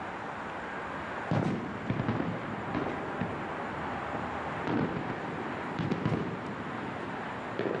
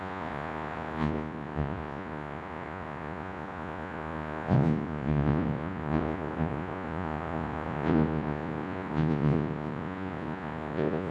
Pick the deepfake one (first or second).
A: second